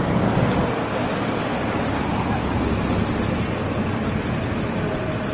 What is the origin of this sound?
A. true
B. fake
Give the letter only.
A